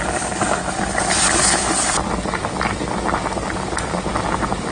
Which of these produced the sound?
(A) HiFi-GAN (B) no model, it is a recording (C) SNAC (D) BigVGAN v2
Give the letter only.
B